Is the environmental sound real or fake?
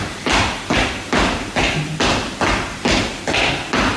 real